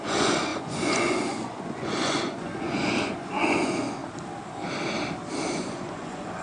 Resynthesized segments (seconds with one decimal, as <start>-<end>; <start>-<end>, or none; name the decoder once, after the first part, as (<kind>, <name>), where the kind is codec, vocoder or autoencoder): 0.0-4.0 (vocoder, Vocos); 5.5-6.4